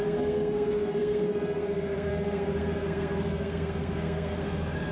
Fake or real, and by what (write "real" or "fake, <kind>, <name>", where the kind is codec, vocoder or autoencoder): fake, codec, SNAC